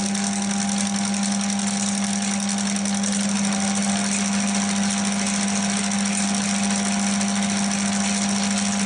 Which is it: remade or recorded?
recorded